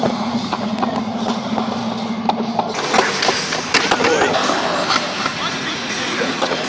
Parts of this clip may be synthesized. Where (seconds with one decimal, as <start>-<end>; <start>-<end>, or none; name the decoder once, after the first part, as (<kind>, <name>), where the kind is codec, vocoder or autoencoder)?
0.0-1.8 (vocoder, Vocos); 5.5-6.7